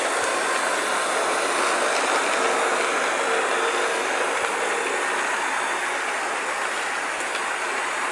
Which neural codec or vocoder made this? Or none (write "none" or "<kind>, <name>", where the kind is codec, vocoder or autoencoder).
none